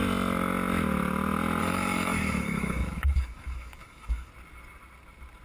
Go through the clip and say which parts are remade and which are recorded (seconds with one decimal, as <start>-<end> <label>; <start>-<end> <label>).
0.0-1.6 recorded; 1.6-4.3 remade; 4.3-5.4 recorded